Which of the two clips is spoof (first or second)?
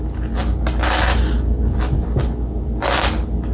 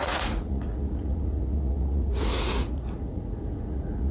second